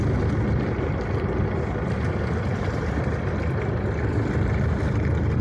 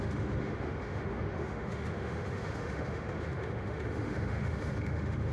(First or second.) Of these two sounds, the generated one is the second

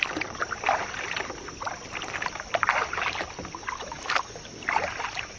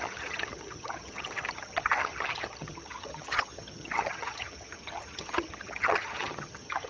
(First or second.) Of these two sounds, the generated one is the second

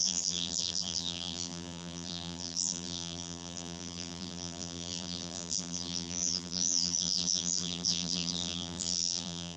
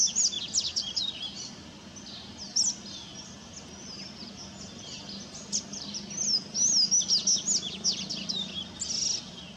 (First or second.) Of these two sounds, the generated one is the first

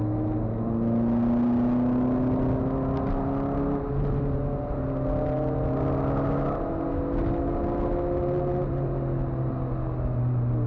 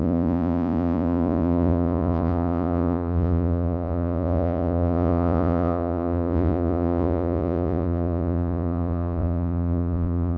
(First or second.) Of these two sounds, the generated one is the second